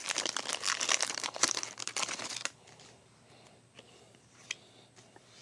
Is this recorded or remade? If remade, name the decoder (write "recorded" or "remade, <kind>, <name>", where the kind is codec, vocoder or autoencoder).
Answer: recorded